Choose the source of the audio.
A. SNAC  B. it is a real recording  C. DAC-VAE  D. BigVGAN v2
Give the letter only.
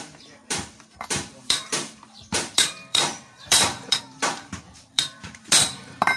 D